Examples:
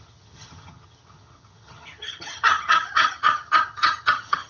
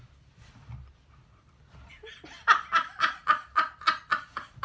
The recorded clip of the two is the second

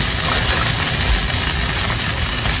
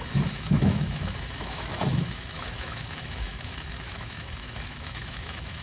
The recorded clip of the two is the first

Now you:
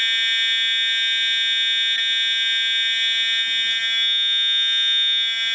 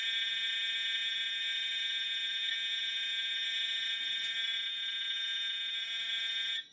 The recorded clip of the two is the first